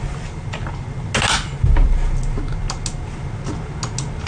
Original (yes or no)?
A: yes